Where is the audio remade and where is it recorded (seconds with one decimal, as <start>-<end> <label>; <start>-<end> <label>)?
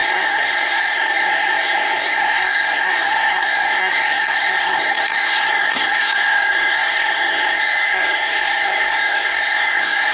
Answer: 0.0-10.1 remade